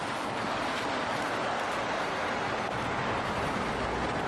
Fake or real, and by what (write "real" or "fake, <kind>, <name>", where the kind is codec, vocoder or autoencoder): real